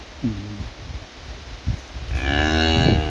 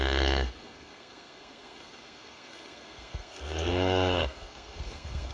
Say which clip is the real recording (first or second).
first